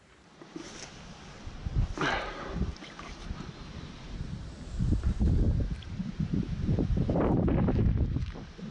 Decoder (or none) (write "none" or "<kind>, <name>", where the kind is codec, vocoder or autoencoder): vocoder, BigVGAN v2